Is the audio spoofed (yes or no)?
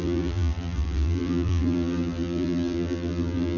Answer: yes